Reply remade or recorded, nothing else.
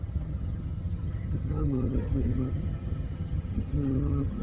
remade